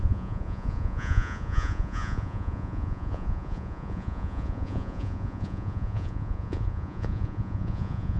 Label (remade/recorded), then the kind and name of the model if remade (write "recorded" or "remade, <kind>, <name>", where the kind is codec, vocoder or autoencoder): remade, vocoder, Vocos